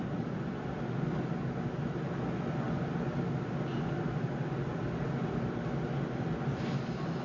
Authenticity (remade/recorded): recorded